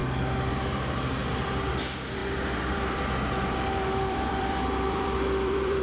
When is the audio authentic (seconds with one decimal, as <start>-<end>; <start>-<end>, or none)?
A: 0.0-1.2; 1.7-2.2